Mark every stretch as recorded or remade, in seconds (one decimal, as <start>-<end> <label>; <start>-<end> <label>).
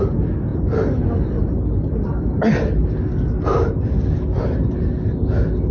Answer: 0.0-5.7 recorded